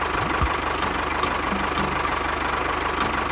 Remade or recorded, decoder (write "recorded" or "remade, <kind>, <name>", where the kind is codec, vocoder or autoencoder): recorded